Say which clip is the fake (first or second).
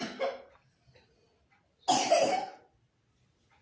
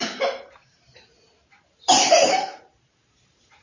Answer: second